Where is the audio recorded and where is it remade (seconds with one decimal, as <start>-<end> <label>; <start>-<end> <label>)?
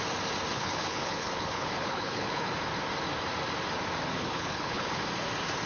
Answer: 0.0-0.5 recorded; 0.5-2.5 remade; 2.5-4.1 recorded; 4.1-5.0 remade; 5.0-5.7 recorded